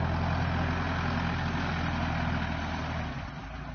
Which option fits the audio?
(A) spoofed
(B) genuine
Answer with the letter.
B